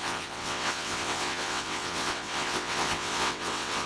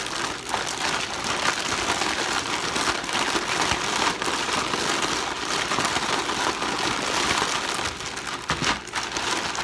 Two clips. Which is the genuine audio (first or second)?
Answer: second